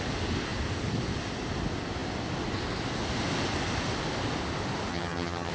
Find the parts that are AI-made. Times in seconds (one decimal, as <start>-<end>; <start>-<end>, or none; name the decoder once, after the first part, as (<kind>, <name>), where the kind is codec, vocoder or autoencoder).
4.9-5.5 (vocoder, HiFi-GAN)